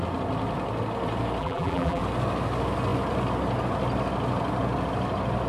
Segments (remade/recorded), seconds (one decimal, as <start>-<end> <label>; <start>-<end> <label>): 0.0-1.4 recorded; 1.4-2.0 remade; 2.0-5.5 recorded